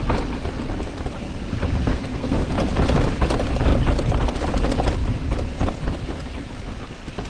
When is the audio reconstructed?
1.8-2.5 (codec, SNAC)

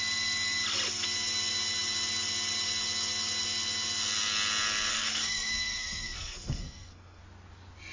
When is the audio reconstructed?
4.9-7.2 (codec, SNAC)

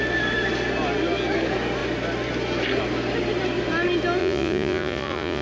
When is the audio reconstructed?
4.2-5.4 (vocoder, Vocos)

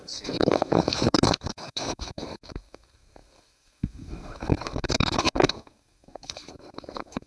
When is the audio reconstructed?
0.0-7.3 (codec, SNAC)

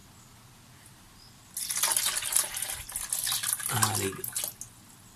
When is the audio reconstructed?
none

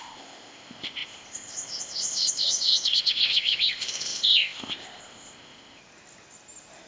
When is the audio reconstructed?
0.0-5.8 (codec, ZipCodec)